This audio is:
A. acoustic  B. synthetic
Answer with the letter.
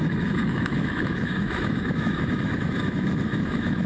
B